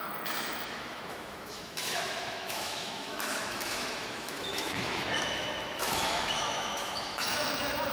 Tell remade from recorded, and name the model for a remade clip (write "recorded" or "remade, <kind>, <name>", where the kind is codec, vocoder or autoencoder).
remade, autoencoder, DAC-VAE